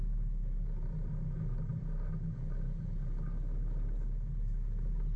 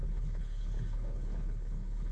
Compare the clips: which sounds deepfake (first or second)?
second